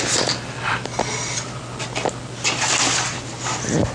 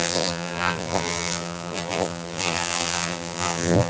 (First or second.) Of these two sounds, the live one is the first